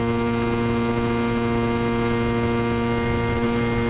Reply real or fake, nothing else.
real